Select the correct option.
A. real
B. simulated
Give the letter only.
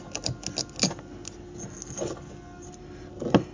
A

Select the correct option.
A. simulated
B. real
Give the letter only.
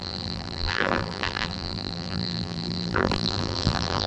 A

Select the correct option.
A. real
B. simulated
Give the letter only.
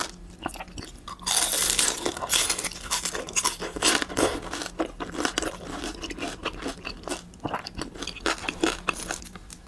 A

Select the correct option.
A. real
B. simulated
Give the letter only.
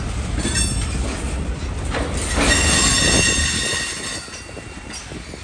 A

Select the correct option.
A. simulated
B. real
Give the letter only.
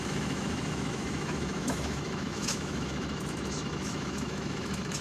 A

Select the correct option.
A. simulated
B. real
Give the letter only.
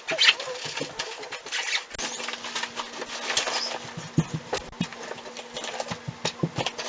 B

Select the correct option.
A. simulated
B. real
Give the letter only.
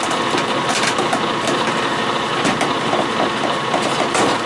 A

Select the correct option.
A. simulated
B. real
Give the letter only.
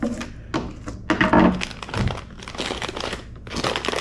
B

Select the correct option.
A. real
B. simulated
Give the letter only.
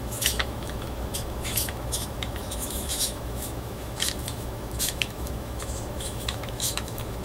B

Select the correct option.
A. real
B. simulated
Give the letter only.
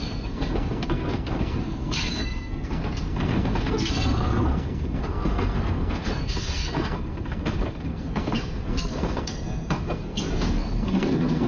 B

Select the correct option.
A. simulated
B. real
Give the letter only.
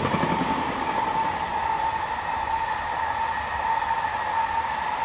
B